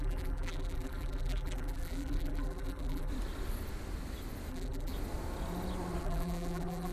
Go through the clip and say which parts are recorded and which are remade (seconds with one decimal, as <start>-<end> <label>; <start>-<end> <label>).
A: 0.0-3.1 remade; 3.1-4.5 recorded; 4.5-4.9 remade; 4.9-6.0 recorded; 6.0-6.9 remade